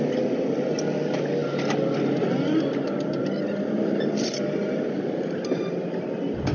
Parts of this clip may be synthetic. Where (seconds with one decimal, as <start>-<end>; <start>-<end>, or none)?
none